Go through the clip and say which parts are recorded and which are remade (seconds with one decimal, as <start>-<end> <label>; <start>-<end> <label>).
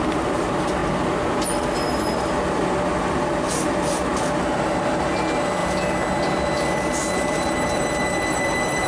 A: 0.0-8.9 recorded